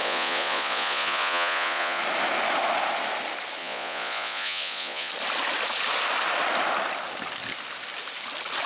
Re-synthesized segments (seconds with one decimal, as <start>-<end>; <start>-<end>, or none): 0.0-2.0; 3.6-5.1